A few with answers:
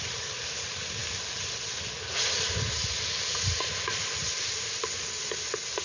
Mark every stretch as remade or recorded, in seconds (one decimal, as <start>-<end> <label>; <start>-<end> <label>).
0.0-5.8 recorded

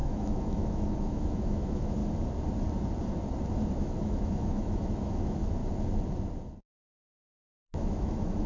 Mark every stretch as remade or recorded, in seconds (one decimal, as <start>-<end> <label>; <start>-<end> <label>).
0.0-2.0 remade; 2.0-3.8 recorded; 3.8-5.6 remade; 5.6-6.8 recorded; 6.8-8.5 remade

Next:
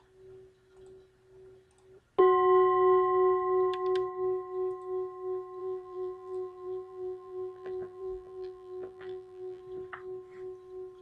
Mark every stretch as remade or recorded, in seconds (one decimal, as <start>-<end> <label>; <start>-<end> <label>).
0.0-5.6 recorded; 5.6-9.6 remade; 9.6-11.0 recorded

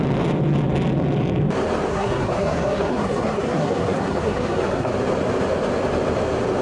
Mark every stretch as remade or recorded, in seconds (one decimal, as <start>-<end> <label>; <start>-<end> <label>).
0.0-1.9 recorded; 1.9-4.9 remade; 4.9-6.6 recorded